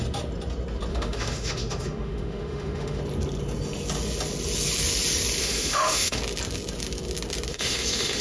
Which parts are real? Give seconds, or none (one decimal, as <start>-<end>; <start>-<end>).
0.0-0.9; 3.0-5.4; 6.2-7.5